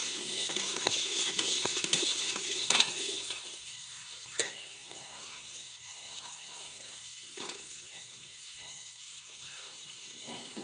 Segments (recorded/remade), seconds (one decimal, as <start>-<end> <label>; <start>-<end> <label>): 0.0-10.6 remade